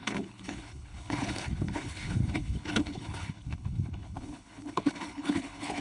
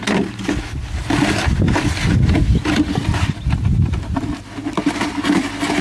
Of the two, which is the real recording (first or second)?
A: second